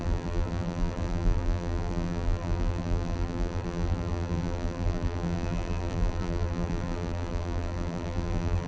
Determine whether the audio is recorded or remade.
remade